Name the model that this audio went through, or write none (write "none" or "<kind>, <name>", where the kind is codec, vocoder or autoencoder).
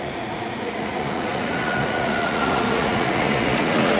vocoder, Vocos